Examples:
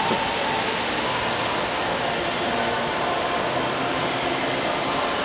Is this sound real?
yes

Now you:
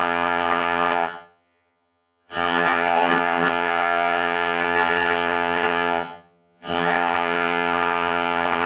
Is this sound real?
no